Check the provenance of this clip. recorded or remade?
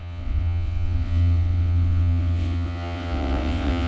remade